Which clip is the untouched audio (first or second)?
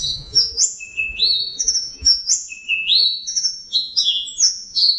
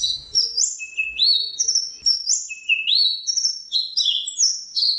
second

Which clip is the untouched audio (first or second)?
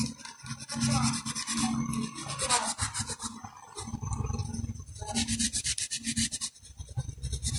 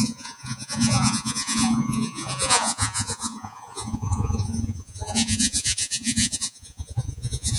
first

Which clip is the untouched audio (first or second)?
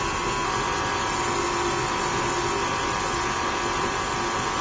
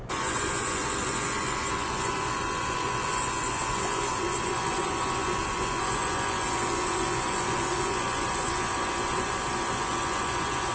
first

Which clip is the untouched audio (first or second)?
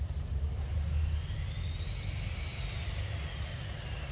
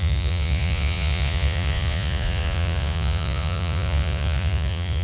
first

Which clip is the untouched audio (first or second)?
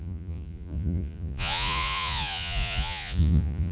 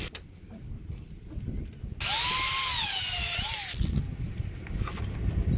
second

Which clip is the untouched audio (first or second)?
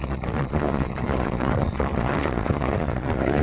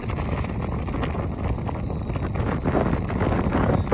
second